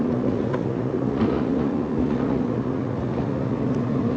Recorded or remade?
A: remade